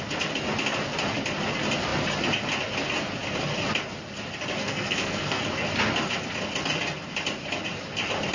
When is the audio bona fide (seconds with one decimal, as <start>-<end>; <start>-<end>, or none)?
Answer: 0.0-4.6; 5.4-8.3